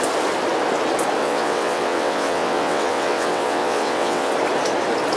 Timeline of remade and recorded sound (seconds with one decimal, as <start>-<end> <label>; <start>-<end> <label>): 0.0-1.2 recorded; 1.2-4.3 remade; 4.3-5.2 recorded